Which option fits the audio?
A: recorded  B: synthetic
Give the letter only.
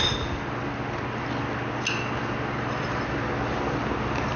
A